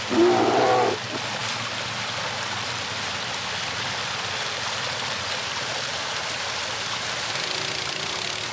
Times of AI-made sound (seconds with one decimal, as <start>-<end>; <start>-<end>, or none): none